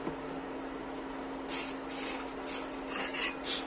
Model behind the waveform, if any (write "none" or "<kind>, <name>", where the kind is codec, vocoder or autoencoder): none